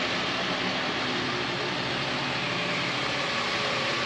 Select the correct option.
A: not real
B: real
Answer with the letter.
B